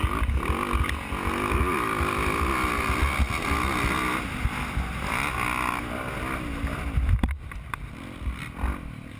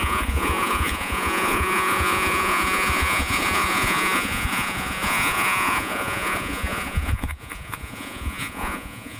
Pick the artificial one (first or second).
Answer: second